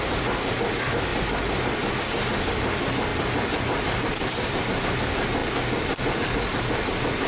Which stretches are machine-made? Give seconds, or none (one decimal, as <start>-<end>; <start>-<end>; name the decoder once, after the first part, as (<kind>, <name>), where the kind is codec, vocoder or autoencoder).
3.1-4.8 (vocoder, BigVGAN v2)